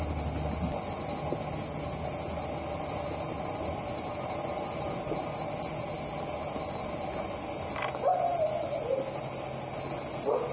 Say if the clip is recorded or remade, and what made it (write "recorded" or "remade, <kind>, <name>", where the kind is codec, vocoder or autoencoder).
recorded